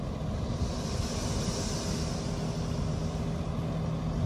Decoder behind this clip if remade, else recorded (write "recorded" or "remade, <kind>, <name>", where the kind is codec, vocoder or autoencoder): recorded